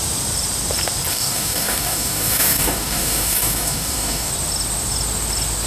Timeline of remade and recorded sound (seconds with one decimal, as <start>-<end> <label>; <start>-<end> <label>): 0.0-1.1 recorded; 1.1-4.3 remade; 4.3-5.7 recorded